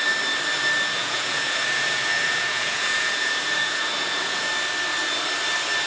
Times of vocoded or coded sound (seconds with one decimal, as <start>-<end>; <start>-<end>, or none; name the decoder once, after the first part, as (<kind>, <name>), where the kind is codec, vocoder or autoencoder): 1.0-4.5 (vocoder, Vocos)